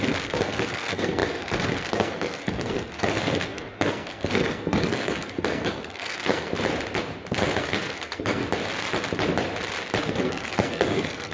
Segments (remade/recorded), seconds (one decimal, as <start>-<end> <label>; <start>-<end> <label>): 0.0-6.5 remade; 6.5-7.3 recorded; 7.3-8.4 remade; 8.4-10.0 recorded; 10.0-11.3 remade